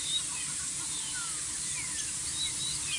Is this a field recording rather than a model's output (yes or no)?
yes